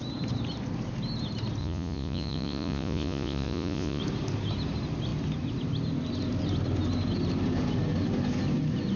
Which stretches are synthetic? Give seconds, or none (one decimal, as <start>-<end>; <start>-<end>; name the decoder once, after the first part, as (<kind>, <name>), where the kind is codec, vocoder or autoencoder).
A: 1.6-4.0 (vocoder, Vocos)